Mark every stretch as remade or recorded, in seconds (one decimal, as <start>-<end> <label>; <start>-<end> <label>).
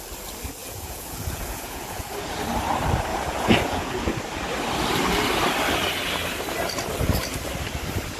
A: 0.0-0.6 recorded; 0.6-2.4 remade; 2.4-3.1 recorded; 3.1-4.1 remade; 4.1-8.2 recorded